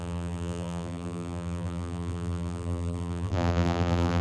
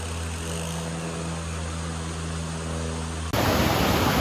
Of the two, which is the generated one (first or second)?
first